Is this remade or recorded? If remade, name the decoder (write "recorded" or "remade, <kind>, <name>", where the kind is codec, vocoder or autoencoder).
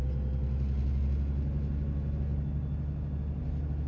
recorded